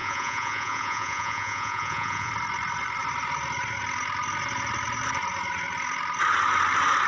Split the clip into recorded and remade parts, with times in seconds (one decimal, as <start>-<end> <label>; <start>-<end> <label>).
0.0-2.3 remade; 2.3-7.1 recorded